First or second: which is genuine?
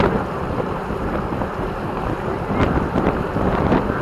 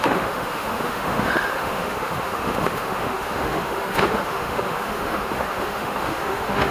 first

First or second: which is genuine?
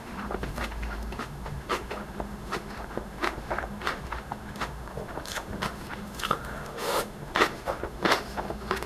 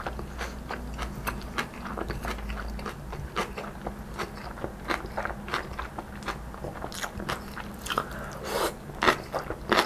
second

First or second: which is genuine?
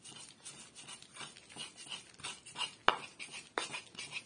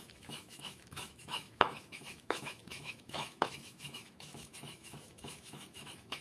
first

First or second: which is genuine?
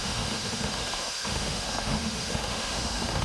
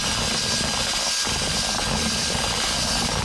second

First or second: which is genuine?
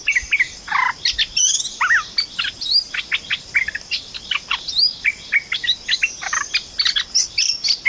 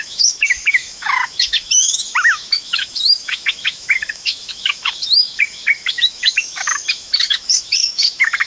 first